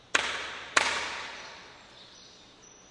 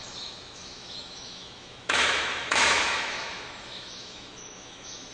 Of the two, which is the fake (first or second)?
second